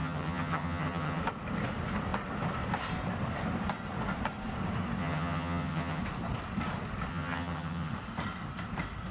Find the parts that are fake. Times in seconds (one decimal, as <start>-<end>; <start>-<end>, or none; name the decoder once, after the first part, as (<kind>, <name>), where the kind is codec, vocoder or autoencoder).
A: 0.0-1.2 (vocoder, HiFi-GAN); 5.0-6.0; 7.1-7.9

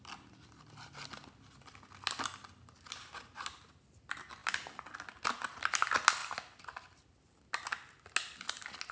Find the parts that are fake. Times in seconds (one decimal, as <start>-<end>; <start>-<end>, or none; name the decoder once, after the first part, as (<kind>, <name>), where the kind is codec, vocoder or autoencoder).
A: none

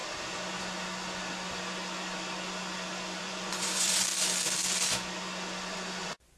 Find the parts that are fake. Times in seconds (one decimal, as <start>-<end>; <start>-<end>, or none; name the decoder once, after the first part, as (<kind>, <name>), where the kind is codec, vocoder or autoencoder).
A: 3.2-4.1 (vocoder, Vocos); 6.0-6.4

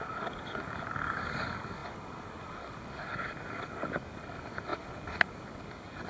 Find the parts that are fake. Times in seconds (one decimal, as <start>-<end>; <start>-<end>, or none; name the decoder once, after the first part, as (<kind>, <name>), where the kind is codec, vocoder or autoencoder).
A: 0.0-6.1 (codec, DAC)

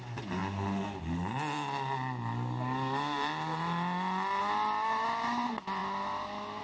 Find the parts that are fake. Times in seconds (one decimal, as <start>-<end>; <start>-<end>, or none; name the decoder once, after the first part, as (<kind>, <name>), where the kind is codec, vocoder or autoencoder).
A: none